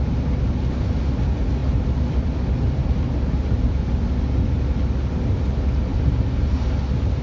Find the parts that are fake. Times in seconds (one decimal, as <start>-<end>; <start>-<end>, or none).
1.6-3.9; 5.9-6.4